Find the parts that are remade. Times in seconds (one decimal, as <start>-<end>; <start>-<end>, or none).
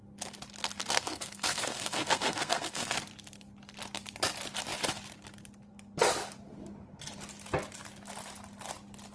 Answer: 0.8-3.0